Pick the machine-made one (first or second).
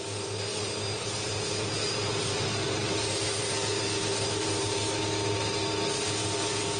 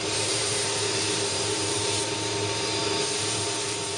second